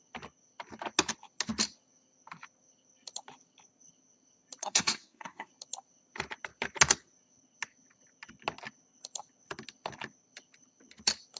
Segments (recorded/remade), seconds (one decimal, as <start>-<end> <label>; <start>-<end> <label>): 0.0-4.6 recorded; 4.6-5.5 remade; 5.5-11.4 recorded